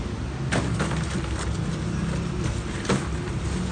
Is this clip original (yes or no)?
yes